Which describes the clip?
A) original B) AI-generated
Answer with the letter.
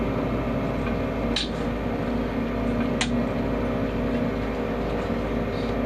A